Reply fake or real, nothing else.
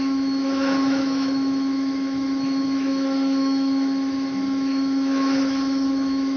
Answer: fake